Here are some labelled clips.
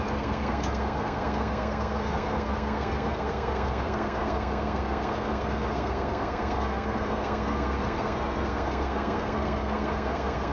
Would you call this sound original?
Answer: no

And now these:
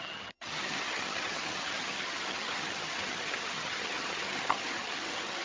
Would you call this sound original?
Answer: no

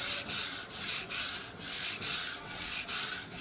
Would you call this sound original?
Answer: no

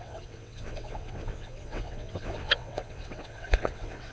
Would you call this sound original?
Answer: no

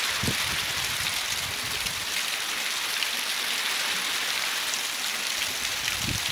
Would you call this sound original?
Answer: yes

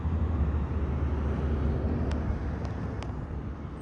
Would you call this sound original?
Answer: yes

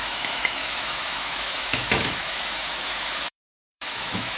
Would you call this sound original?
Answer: no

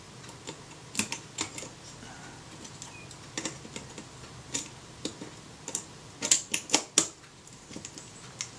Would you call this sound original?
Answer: yes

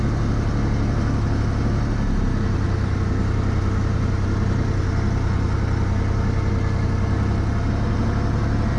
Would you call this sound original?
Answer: yes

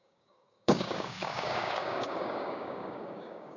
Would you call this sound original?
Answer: no